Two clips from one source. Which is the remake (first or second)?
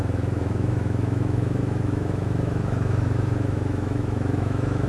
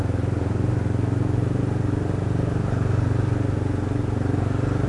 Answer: first